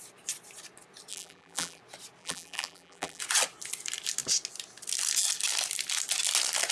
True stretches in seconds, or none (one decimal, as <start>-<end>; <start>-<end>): 0.0-1.1; 1.8-2.2; 3.2-6.7